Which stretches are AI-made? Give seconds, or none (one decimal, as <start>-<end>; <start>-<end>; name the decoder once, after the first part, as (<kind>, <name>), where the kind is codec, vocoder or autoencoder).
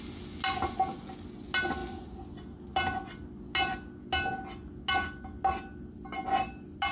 none